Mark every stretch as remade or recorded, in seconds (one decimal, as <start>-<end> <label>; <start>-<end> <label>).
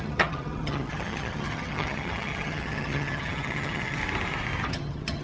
0.0-4.0 remade; 4.0-4.7 recorded; 4.7-5.2 remade